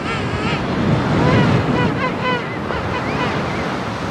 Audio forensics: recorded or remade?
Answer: recorded